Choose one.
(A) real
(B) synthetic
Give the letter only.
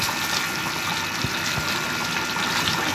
A